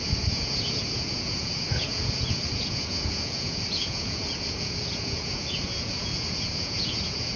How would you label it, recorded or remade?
remade